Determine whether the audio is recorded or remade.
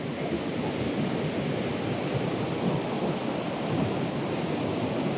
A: recorded